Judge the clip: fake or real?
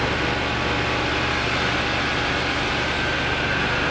real